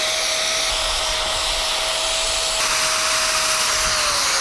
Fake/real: real